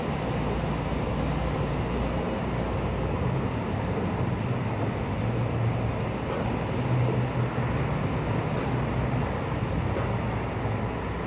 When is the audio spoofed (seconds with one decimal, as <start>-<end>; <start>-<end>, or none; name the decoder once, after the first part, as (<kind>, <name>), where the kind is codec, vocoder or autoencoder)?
none